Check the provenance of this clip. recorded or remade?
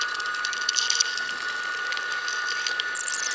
recorded